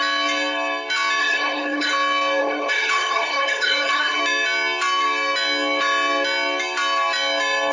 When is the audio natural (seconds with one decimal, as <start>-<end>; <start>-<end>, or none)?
0.0-1.2; 1.9-2.4; 4.2-7.7